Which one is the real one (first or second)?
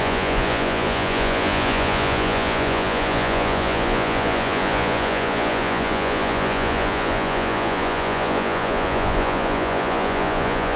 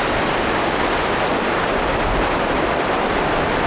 second